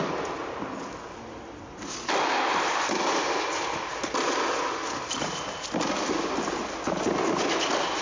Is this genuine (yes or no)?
yes